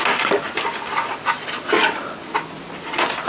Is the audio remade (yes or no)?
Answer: no